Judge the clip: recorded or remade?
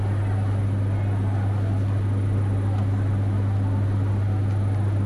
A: recorded